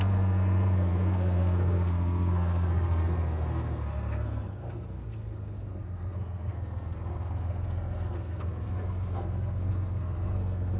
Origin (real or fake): fake